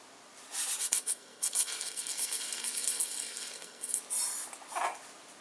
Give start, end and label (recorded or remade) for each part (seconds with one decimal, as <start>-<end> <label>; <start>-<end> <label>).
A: 0.0-0.8 recorded; 0.8-4.0 remade; 4.0-5.4 recorded